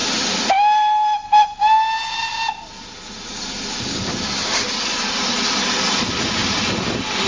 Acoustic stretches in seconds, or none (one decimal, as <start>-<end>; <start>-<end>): 0.0-7.3